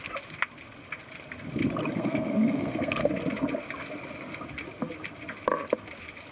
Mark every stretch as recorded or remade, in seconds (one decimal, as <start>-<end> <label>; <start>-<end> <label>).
0.0-1.9 recorded; 1.9-3.1 remade; 3.1-6.3 recorded